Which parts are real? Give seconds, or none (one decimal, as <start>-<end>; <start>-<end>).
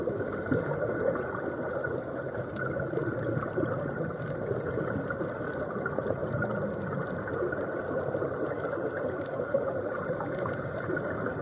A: 0.0-11.4